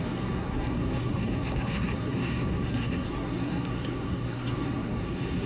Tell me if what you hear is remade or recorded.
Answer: remade